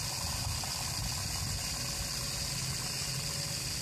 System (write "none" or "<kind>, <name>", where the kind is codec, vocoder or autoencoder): none